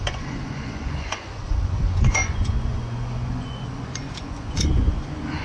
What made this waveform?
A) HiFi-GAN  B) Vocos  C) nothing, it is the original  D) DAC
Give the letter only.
B